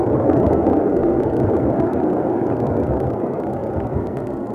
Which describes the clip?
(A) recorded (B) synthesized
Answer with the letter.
B